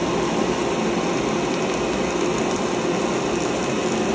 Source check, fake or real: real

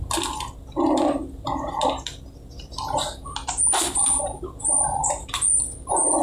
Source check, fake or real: real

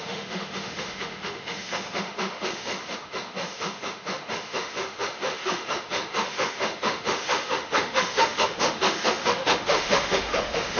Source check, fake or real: fake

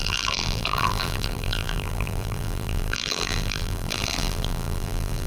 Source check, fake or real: fake